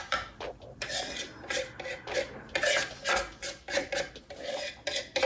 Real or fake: real